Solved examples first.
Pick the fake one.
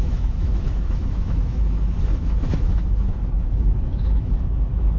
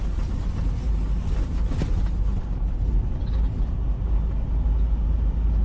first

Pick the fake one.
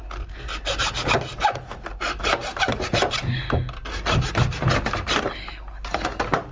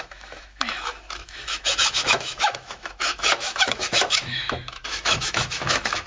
second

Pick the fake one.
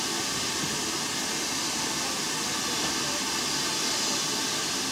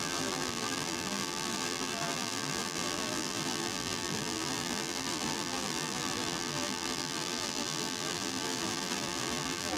second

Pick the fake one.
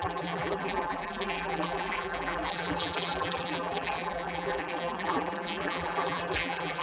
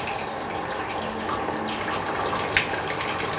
first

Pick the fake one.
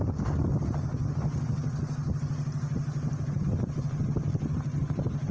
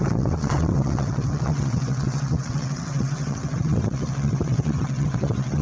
second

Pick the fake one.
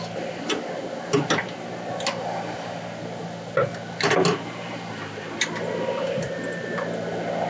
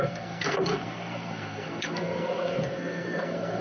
second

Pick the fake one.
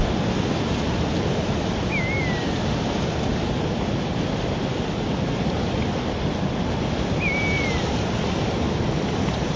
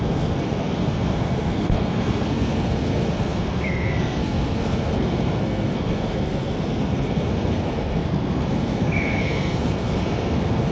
second